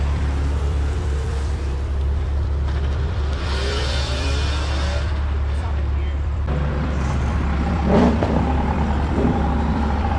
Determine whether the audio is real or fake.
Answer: fake